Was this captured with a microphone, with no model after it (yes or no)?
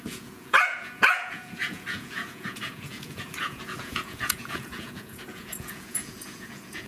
no